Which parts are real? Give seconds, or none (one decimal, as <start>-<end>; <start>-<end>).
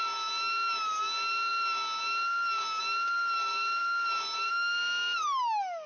0.0-5.9